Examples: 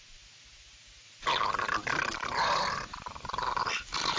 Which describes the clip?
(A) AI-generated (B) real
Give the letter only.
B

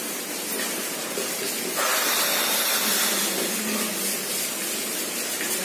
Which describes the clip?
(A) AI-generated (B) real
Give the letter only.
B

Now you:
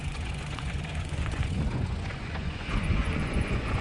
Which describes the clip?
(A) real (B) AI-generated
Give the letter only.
B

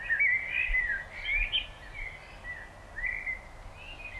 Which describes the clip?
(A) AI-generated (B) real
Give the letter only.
B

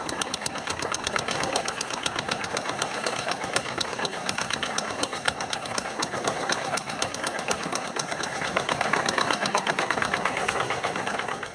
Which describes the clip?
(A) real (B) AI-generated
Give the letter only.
B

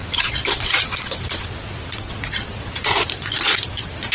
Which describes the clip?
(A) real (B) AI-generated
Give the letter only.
B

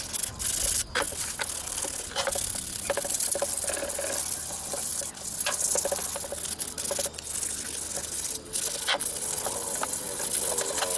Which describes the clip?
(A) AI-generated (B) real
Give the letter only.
B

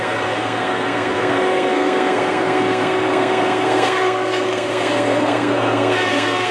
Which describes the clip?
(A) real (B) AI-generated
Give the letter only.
B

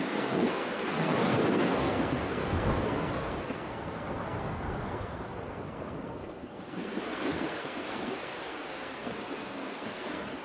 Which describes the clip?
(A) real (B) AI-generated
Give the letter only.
B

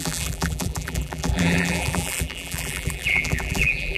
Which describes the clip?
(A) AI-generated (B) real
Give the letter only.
A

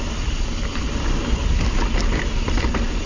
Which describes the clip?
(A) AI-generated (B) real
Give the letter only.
B